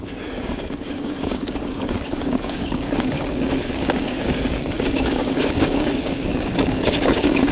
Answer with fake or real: fake